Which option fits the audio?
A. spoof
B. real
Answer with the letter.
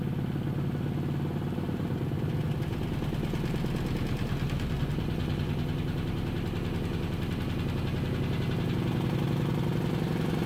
B